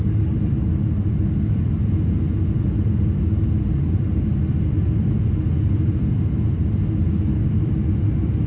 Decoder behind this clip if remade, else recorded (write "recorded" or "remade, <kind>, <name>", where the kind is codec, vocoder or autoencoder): recorded